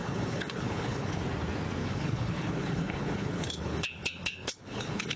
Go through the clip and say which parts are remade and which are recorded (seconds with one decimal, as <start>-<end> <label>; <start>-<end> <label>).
0.0-1.2 remade; 1.2-1.8 recorded; 1.8-5.2 remade